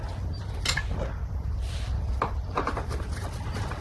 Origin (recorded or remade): recorded